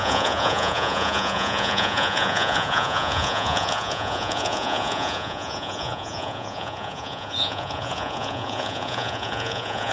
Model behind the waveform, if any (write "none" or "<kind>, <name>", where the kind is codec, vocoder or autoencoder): vocoder, Vocos